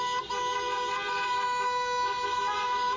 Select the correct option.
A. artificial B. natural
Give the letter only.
B